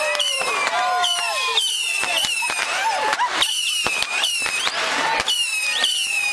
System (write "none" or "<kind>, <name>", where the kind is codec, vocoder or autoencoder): vocoder, BigVGAN v2